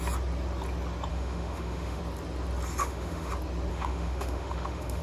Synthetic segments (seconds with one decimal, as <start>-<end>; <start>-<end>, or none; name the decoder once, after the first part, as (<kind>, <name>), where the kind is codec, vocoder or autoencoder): 1.1-2.0 (autoencoder, DAC-VAE); 2.8-3.3; 3.7-5.0